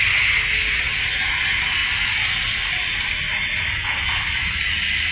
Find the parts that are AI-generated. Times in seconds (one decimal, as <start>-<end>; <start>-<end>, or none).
none